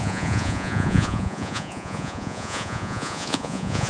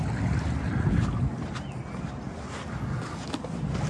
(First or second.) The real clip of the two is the second